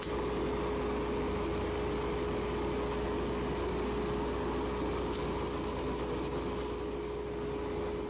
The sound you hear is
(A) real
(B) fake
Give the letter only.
A